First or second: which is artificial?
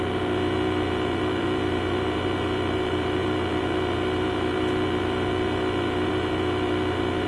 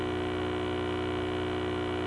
first